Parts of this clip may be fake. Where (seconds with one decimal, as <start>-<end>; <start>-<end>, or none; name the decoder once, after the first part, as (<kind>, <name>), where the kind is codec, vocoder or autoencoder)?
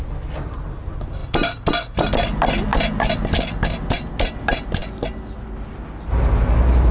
none